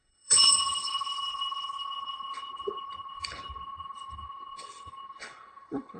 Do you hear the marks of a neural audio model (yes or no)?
yes